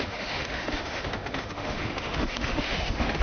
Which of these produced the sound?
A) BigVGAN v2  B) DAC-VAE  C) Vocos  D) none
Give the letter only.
B